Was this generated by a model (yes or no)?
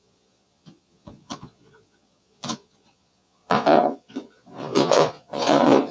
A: yes